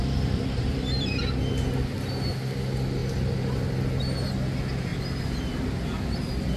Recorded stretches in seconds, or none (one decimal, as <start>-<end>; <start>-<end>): 1.4-6.6